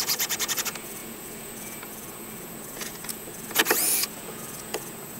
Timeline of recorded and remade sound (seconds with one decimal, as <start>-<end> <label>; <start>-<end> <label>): 0.0-5.2 remade